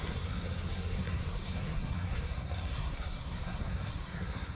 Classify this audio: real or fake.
fake